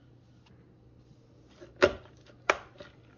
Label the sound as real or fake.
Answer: real